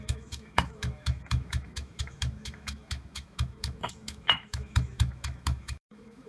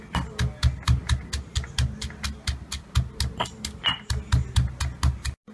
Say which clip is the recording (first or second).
second